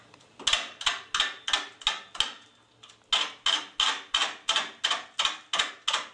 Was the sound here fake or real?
real